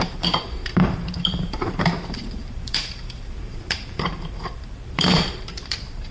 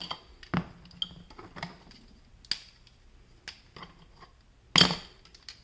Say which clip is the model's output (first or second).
first